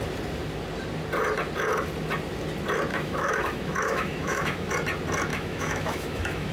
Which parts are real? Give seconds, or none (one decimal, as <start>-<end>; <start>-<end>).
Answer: 0.0-2.9; 4.7-5.3